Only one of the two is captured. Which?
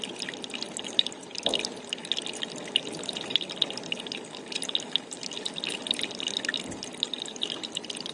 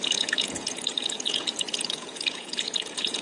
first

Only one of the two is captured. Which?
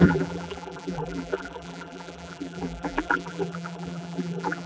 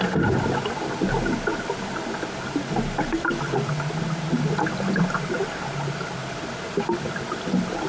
second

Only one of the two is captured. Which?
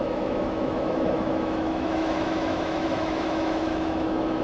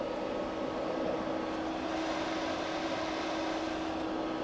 second